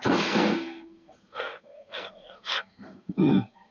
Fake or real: fake